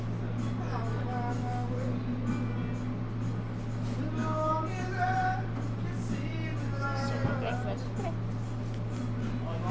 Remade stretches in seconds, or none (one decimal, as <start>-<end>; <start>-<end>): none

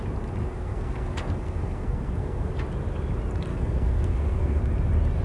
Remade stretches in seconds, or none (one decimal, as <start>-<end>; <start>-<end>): 0.4-2.5; 3.5-4.6

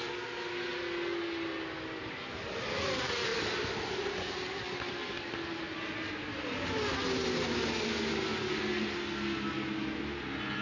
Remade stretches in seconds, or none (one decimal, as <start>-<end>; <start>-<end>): none